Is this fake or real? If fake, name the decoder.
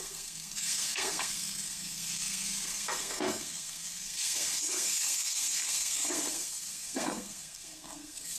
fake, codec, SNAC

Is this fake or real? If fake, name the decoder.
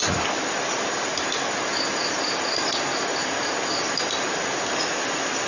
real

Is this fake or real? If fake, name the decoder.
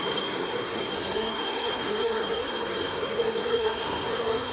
fake, codec, SNAC